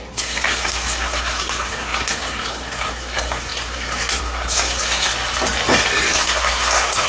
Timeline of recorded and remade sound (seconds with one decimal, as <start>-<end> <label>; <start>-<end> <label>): 0.0-5.1 remade; 5.1-6.1 recorded; 6.1-7.1 remade